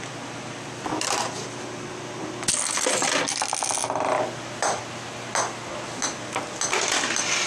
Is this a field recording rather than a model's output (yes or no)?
yes